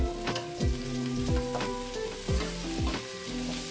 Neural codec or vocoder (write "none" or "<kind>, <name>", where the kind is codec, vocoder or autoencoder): none